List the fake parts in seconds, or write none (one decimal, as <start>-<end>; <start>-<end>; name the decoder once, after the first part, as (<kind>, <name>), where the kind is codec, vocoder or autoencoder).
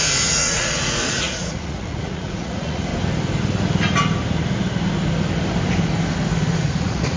0.0-2.9 (vocoder, Vocos); 6.5-7.2